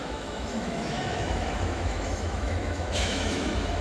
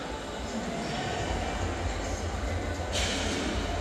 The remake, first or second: first